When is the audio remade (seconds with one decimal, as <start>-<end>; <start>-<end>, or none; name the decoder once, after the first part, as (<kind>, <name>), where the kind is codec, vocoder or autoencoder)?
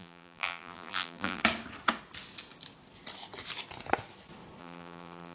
0.0-1.4 (vocoder, BigVGAN v2); 4.6-5.3